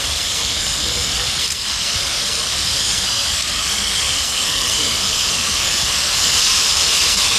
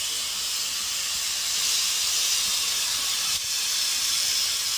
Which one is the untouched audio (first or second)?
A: second